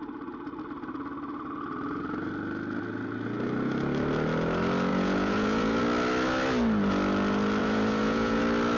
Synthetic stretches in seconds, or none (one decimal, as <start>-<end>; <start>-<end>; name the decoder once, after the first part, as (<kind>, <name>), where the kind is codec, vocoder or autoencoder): 4.9-5.8 (vocoder, Vocos); 7.6-8.4